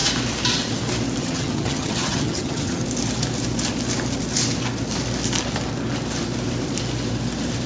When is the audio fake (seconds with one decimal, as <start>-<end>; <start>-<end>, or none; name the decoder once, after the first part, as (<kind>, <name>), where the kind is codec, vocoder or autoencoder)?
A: 1.2-2.8 (vocoder, HiFi-GAN)